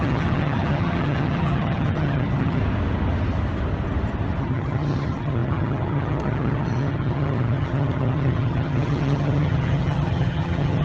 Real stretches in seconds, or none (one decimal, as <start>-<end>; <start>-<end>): 2.6-4.4